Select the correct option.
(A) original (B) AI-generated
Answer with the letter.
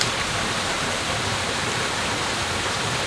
A